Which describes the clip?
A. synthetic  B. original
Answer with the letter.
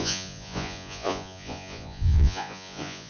A